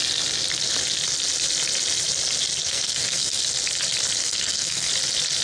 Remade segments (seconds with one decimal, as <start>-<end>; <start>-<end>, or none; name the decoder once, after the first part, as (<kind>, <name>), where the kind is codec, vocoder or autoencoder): 2.6-3.4 (codec, SNAC); 4.2-4.9